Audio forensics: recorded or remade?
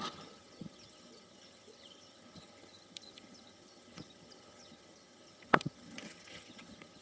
remade